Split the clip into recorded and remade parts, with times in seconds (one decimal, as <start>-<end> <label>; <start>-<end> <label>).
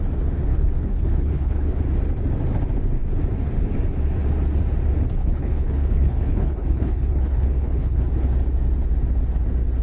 0.0-0.5 recorded; 0.5-1.8 remade; 1.8-5.2 recorded; 5.2-8.0 remade; 8.0-9.8 recorded